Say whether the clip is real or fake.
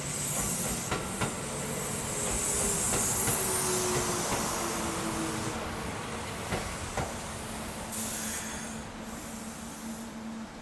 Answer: real